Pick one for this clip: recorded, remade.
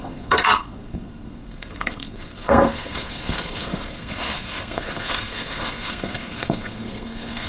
remade